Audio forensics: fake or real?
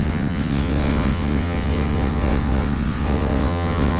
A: fake